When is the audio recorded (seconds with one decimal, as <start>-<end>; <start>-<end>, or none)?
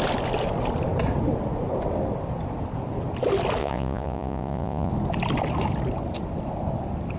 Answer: 0.0-3.6; 4.9-7.2